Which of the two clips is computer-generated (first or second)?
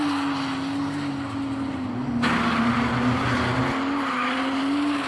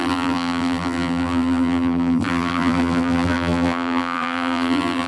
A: second